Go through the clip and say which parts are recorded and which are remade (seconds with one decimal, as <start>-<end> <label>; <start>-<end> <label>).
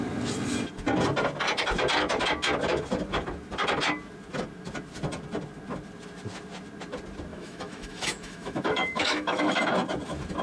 0.0-7.3 recorded; 7.3-9.6 remade; 9.6-10.4 recorded